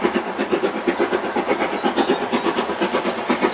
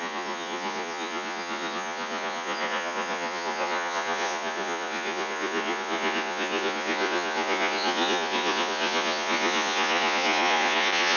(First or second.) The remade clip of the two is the second